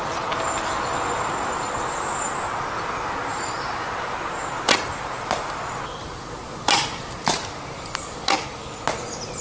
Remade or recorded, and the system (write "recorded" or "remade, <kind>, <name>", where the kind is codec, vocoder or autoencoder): recorded